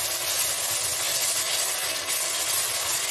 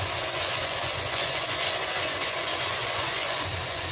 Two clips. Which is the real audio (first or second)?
first